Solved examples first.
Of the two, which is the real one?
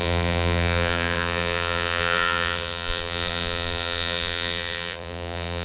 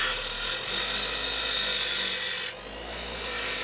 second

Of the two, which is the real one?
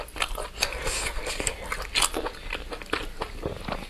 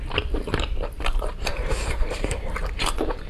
first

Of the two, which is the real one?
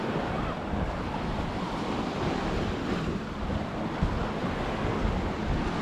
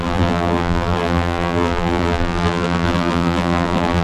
first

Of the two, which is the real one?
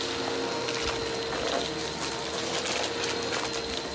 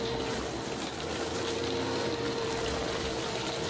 first